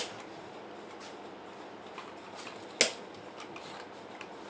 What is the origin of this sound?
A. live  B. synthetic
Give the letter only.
A